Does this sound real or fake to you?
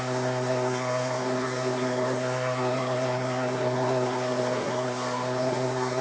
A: fake